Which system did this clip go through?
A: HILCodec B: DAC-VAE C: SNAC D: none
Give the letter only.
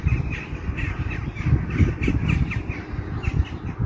D